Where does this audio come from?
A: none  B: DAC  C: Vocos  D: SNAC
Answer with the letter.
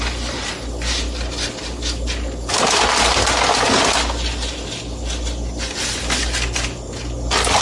A